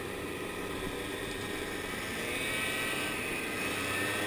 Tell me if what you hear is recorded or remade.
remade